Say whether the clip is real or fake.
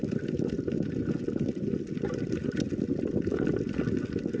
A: real